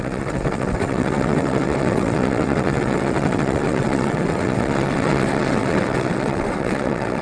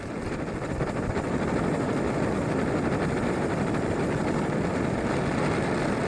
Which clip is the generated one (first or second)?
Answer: first